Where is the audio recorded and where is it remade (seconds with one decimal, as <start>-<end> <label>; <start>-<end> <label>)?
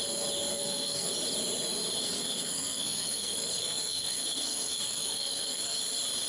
0.0-0.5 recorded; 0.5-1.1 remade; 1.1-2.0 recorded; 2.0-5.8 remade; 5.8-6.3 recorded